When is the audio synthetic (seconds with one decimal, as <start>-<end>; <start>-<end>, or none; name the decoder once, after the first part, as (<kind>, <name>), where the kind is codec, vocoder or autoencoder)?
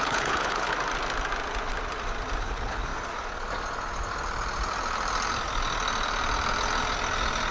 0.0-0.7 (codec, HILCodec); 2.4-2.9